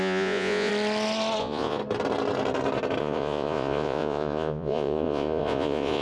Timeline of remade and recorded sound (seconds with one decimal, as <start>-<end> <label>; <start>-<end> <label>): 0.0-0.7 remade; 0.7-1.4 recorded; 1.4-1.8 remade; 1.8-3.0 recorded; 3.0-6.0 remade